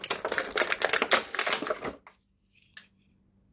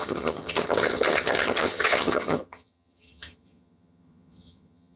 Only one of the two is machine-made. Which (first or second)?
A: second